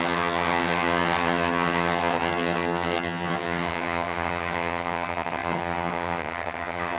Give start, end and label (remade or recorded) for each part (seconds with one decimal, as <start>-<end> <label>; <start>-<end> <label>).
0.0-7.0 remade